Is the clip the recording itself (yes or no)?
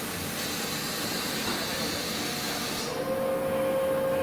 yes